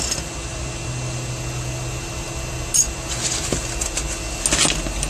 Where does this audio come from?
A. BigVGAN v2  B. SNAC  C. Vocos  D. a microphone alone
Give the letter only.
D